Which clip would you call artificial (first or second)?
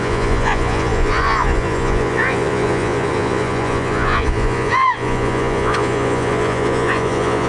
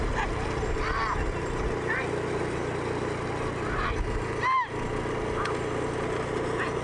first